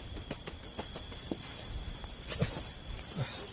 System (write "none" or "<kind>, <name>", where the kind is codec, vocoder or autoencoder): none